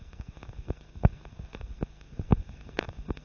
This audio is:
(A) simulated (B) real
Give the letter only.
A